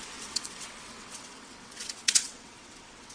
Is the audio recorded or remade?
remade